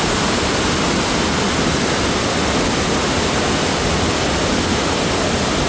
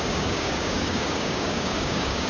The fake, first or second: second